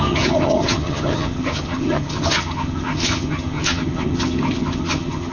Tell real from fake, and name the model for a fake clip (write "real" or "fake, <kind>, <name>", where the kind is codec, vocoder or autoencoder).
fake, vocoder, HiFi-GAN